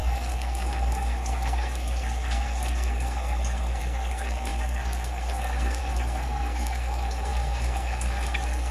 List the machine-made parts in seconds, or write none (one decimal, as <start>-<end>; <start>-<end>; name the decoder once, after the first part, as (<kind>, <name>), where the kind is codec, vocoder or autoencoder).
0.0-8.7 (codec, SNAC)